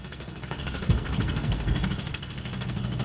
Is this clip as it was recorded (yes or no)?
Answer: no